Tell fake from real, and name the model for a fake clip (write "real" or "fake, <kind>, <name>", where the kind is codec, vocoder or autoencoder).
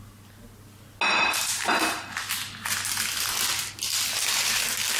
real